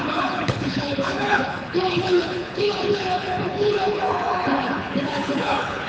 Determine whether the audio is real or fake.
fake